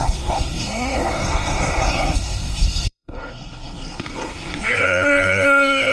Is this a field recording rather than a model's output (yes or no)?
no